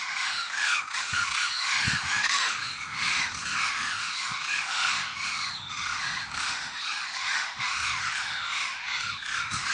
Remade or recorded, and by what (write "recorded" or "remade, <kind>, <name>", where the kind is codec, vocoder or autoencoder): remade, autoencoder, DAC-VAE